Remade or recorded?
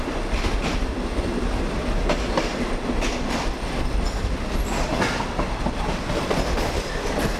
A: recorded